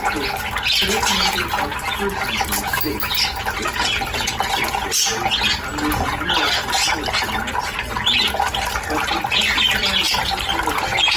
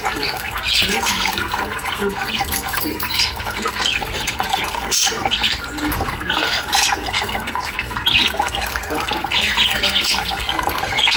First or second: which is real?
first